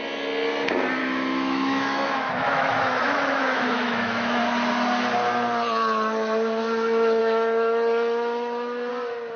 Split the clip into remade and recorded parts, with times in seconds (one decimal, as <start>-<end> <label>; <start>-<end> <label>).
0.0-1.0 recorded; 1.0-4.4 remade; 4.4-7.2 recorded; 7.2-8.9 remade; 8.9-9.4 recorded